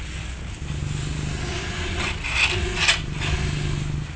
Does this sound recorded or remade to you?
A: recorded